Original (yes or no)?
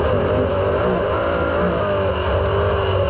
yes